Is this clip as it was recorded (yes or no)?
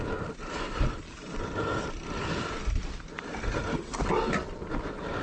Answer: yes